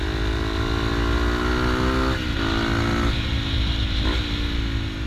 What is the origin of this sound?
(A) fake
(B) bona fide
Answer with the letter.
B